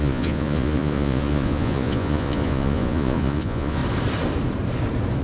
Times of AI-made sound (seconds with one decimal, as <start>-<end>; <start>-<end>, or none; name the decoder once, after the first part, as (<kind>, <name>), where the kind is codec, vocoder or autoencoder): 0.0-3.8 (vocoder, Vocos)